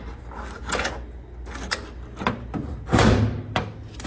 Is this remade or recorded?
recorded